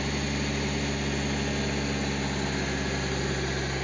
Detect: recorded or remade recorded